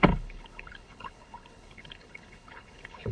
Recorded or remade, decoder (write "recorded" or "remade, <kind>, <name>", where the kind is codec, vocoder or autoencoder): remade, codec, HILCodec